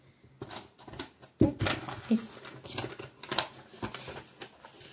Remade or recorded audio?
recorded